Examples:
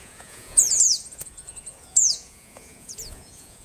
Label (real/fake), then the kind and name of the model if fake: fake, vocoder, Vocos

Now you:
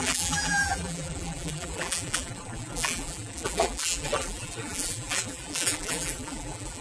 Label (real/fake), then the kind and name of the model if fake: fake, vocoder, BigVGAN v2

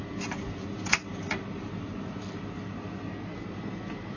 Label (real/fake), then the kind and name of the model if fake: real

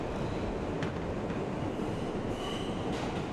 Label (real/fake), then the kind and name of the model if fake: real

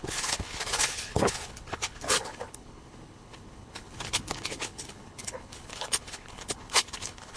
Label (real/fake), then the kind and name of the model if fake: fake, codec, HILCodec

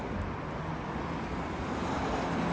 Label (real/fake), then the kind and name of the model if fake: real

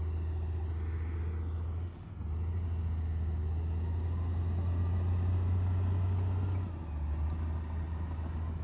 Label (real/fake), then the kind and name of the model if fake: real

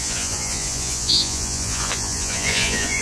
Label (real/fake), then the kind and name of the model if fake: fake, vocoder, Vocos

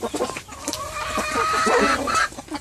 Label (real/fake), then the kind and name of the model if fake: fake, vocoder, BigVGAN v2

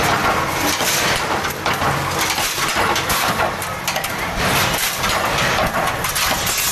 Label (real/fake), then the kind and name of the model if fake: real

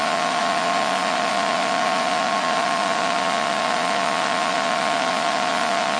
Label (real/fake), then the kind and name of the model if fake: fake, vocoder, Vocos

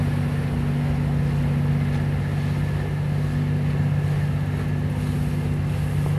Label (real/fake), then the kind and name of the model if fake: real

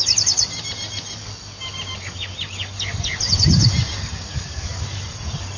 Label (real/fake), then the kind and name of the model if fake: real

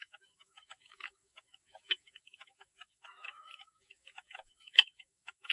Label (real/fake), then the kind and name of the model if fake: fake, autoencoder, DAC-VAE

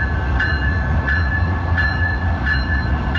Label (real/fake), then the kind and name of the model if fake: fake, vocoder, Vocos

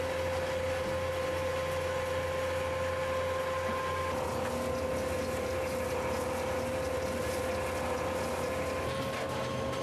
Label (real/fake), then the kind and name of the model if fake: real